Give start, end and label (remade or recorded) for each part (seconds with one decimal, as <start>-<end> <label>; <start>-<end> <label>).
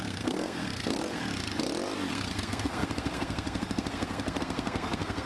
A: 0.0-1.2 remade; 1.2-2.1 recorded; 2.1-5.3 remade